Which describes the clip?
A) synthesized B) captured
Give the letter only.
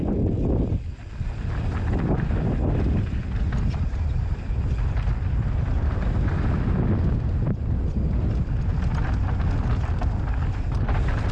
B